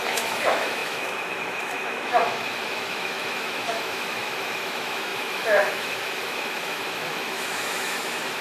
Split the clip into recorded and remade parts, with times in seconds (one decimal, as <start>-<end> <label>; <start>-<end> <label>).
0.0-8.4 remade